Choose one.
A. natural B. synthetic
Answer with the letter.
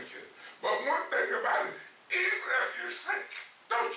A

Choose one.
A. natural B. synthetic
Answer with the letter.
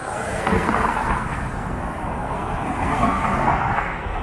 B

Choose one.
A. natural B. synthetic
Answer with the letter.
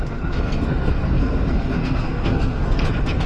B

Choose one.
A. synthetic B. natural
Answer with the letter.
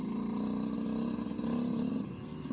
B